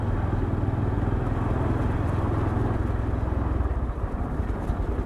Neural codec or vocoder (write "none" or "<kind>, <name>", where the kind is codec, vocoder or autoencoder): none